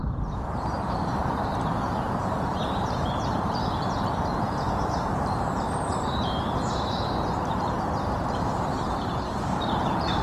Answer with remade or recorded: remade